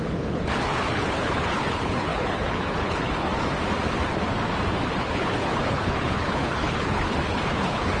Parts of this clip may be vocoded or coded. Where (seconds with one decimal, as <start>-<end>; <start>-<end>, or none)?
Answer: 0.0-3.3; 5.0-8.0